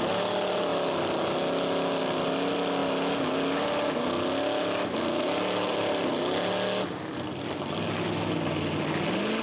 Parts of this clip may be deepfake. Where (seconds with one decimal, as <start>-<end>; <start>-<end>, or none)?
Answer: none